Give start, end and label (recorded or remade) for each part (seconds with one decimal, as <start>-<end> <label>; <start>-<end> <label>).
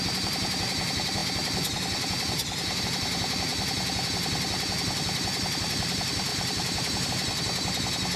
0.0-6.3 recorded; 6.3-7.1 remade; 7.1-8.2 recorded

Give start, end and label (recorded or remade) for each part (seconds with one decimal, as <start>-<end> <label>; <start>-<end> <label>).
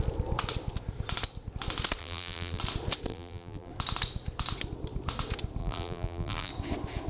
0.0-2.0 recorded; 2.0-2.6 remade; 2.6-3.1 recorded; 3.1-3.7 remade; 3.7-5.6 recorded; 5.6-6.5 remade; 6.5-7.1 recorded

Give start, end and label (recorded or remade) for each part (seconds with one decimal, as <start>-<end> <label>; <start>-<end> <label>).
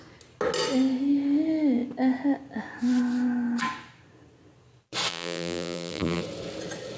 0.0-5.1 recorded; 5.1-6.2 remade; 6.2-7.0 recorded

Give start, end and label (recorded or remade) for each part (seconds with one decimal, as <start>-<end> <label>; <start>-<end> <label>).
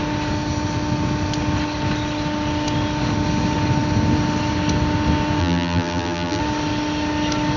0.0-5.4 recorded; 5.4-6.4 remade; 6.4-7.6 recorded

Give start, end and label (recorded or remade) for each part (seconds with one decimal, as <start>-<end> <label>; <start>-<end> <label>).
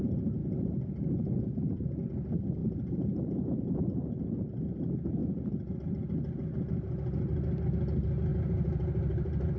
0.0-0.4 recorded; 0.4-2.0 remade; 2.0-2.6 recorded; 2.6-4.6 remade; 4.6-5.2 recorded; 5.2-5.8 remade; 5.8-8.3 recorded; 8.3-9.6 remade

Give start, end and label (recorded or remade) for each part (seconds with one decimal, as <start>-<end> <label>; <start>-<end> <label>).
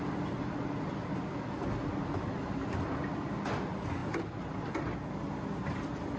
0.0-6.2 recorded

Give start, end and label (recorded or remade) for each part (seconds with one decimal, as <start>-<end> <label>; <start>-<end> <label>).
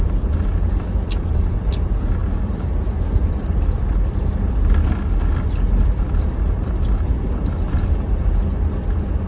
0.0-2.2 recorded; 2.2-2.9 remade; 2.9-9.3 recorded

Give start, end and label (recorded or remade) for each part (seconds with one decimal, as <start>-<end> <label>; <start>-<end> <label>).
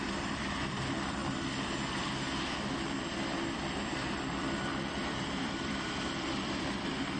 0.0-1.2 remade; 1.2-4.3 recorded; 4.3-7.2 remade